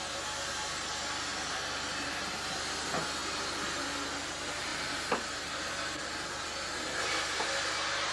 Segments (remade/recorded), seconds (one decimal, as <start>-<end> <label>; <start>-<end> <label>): 0.0-8.1 recorded